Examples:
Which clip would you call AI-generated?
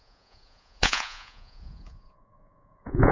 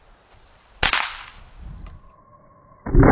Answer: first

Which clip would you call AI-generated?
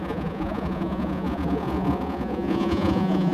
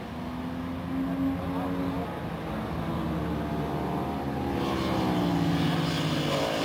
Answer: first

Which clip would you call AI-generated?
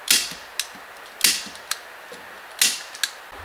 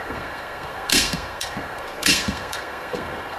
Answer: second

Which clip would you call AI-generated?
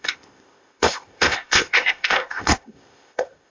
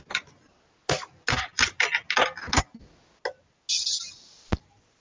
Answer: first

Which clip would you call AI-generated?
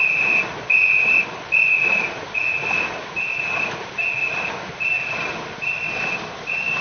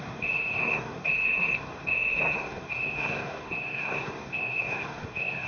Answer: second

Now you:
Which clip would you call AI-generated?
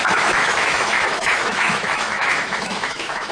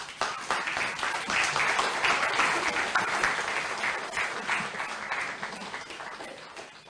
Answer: first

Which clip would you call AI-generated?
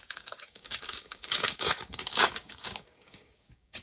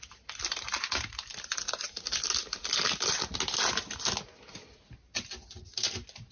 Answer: first